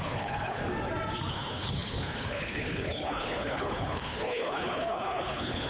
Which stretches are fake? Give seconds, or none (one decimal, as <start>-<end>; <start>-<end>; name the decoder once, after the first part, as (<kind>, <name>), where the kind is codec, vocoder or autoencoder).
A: 0.0-0.6 (codec, HILCodec); 1.3-5.7